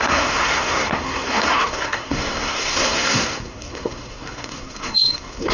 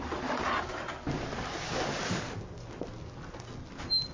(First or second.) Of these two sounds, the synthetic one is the first